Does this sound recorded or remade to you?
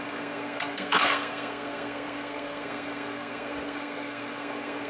remade